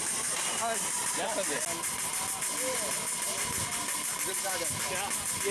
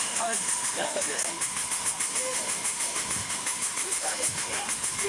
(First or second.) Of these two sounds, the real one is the first